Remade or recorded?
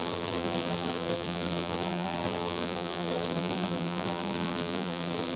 remade